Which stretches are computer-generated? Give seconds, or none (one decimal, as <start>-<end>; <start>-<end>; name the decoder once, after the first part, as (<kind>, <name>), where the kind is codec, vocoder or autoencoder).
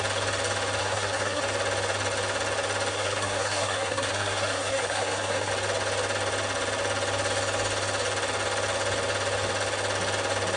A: 0.8-1.4 (codec, SNAC); 2.9-5.5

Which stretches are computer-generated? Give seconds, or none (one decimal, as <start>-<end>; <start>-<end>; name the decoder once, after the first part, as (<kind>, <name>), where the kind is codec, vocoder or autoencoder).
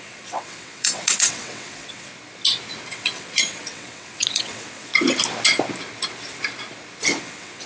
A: 0.0-2.1 (vocoder, WaveNeXt); 2.9-4.9; 7.2-7.7